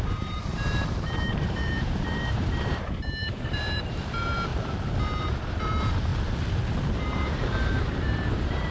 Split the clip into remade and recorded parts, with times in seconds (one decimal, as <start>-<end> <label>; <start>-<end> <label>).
0.0-4.5 remade; 4.5-5.2 recorded; 5.2-6.1 remade; 6.1-7.0 recorded; 7.0-8.7 remade